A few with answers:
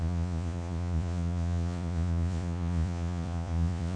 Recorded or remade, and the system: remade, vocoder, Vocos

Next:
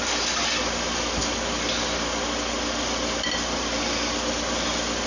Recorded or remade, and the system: recorded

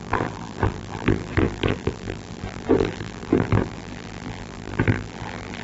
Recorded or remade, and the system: remade, vocoder, BigVGAN v2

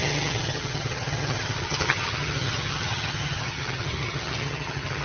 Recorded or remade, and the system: remade, vocoder, HiFi-GAN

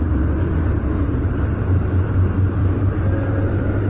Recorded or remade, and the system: remade, vocoder, BigVGAN v2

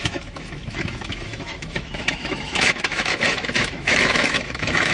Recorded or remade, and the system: remade, autoencoder, DAC-VAE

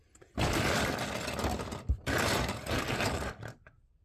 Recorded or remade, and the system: recorded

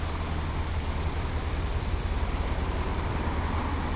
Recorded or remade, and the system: remade, vocoder, BigVGAN v2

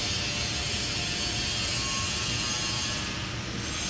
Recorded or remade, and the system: recorded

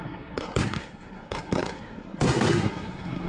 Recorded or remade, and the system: remade, codec, SNAC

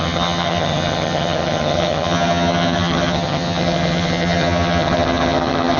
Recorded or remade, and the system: remade, vocoder, HiFi-GAN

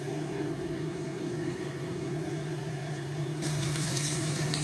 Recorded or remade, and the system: remade, codec, SNAC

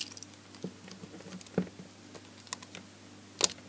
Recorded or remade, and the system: recorded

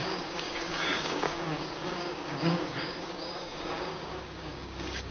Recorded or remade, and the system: remade, codec, DAC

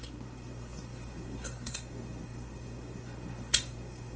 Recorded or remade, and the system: remade, codec, SNAC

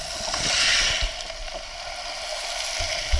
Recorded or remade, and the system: recorded